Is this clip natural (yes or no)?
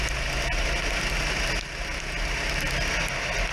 yes